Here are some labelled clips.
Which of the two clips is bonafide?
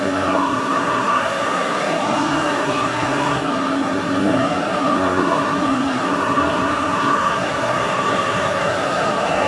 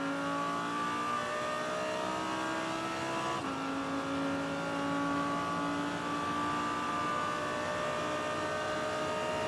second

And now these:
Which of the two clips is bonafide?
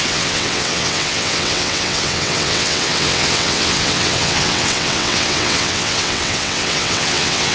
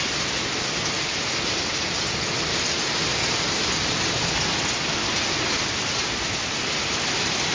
second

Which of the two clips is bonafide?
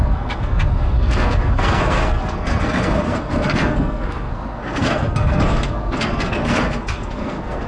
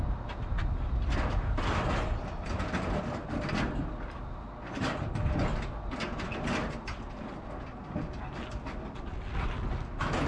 second